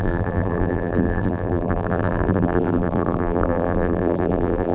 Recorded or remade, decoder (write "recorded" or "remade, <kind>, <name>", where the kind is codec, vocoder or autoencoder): remade, vocoder, BigVGAN v2